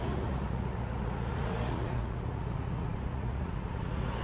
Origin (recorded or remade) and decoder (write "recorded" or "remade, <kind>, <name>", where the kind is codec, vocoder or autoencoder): remade, vocoder, Vocos